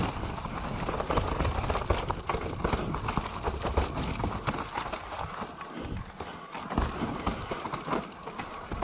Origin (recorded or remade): recorded